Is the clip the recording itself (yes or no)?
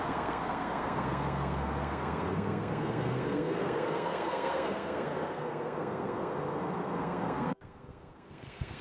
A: no